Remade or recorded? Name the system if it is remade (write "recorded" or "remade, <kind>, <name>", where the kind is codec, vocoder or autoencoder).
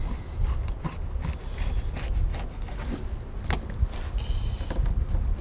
recorded